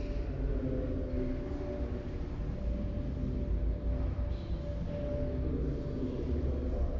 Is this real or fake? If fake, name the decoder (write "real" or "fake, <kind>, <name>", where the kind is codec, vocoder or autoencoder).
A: real